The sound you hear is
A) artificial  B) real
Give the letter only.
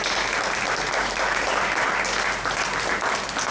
B